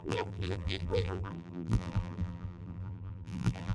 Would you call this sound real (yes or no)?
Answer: no